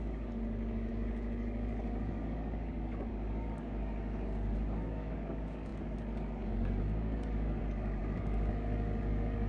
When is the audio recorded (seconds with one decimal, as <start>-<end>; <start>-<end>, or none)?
none